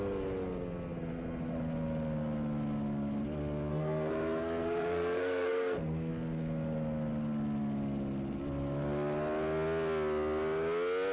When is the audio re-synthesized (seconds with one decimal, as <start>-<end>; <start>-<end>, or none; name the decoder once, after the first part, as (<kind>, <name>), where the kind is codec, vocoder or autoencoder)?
3.7-6.1 (codec, SNAC)